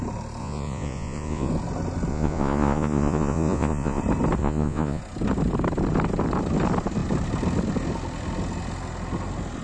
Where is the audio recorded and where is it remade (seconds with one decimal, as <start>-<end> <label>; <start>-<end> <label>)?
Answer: 0.0-0.4 recorded; 0.4-1.5 remade; 1.5-2.1 recorded; 2.1-4.0 remade; 4.0-4.4 recorded; 4.4-5.0 remade; 5.0-9.6 recorded